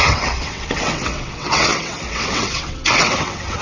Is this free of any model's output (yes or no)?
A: no